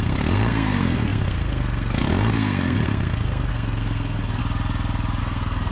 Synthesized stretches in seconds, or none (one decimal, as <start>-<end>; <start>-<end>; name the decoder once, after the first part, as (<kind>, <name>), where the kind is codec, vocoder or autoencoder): 0.0-4.4 (codec, SNAC); 5.2-5.7